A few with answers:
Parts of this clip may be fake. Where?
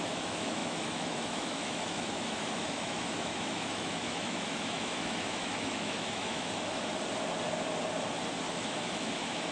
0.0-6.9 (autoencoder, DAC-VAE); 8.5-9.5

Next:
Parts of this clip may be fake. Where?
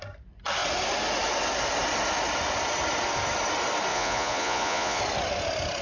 3.9-5.0 (vocoder, Vocos)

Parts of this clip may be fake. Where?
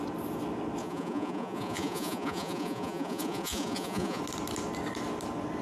0.8-4.2 (vocoder, Vocos)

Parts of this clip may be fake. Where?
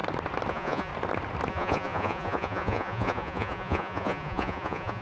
0.5-0.9 (vocoder, Vocos); 1.5-5.0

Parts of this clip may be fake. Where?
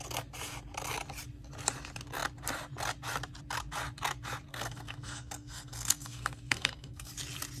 4.5-7.1 (codec, SNAC)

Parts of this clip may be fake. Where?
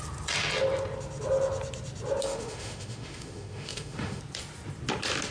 2.2-4.2 (autoencoder, DAC-VAE)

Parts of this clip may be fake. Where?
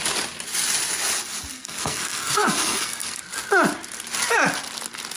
1.5-3.2 (codec, SNAC)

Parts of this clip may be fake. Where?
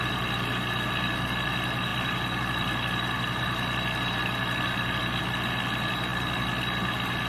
none